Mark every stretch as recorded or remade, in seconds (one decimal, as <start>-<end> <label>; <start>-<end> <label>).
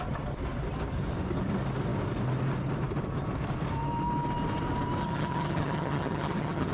0.0-5.0 recorded; 5.0-6.7 remade